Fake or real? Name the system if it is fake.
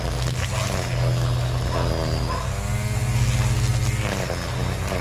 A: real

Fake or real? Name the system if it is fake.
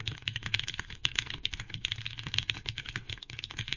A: fake, codec, SNAC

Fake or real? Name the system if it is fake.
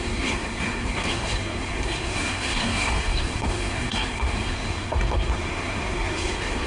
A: fake, codec, SNAC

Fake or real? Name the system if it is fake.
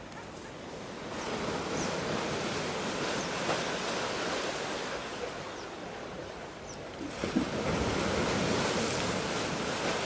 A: real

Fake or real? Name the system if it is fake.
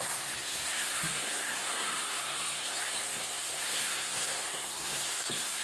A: fake, codec, SNAC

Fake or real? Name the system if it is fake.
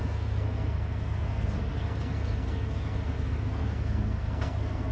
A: fake, codec, SNAC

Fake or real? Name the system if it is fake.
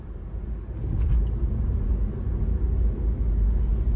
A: real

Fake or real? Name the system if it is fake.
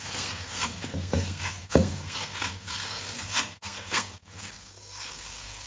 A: fake, codec, SNAC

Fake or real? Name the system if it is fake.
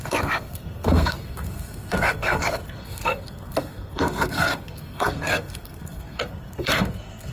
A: fake, codec, SNAC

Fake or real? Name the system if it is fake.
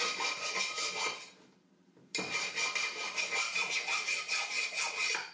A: real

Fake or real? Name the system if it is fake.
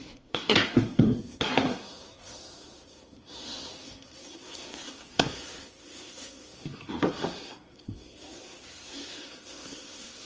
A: fake, codec, SNAC